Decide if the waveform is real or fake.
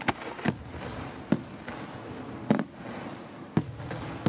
real